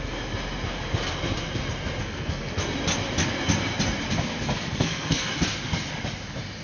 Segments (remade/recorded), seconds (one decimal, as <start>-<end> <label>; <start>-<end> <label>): 0.0-2.0 recorded; 2.0-2.5 remade; 2.5-4.7 recorded; 4.7-5.3 remade; 5.3-6.6 recorded